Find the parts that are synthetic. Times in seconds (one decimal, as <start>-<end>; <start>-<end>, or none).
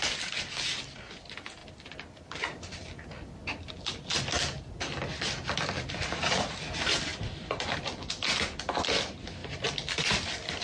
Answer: 1.6-3.7; 7.1-8.1; 9.4-10.1